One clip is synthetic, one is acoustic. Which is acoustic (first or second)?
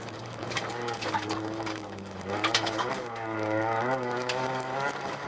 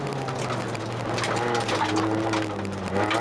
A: second